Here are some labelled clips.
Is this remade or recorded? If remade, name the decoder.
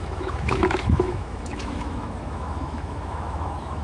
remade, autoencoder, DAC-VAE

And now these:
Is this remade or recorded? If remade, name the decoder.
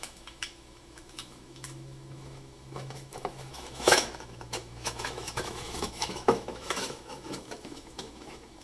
remade, autoencoder, DAC-VAE